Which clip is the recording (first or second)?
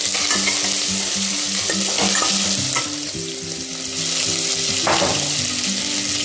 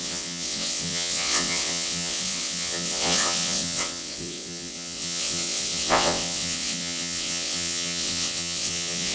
first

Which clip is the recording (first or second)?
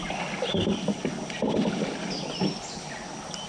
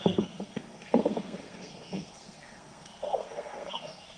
first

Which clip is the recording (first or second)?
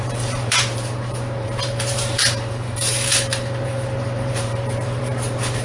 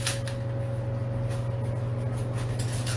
second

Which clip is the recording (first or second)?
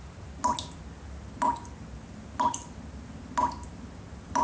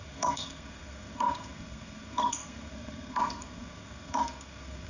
first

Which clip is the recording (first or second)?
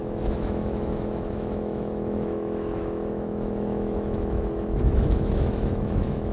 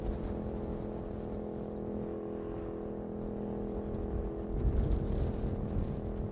second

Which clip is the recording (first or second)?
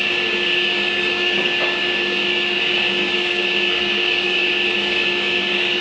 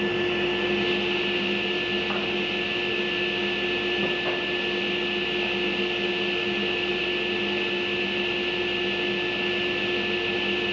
second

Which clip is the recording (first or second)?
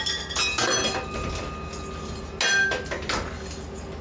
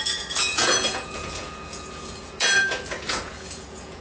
first